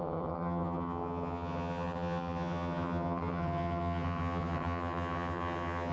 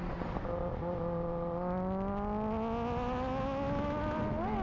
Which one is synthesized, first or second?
first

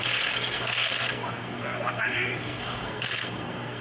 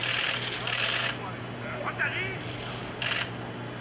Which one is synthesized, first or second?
first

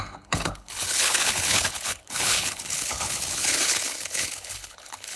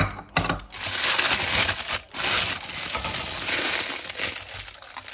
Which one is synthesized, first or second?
first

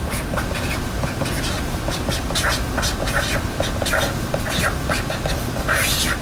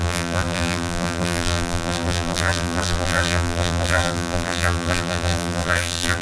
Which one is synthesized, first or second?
second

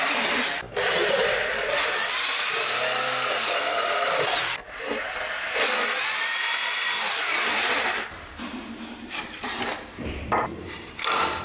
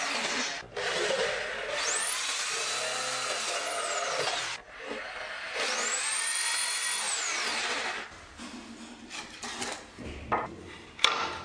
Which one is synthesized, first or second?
first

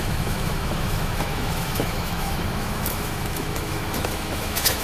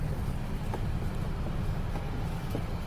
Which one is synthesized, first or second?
first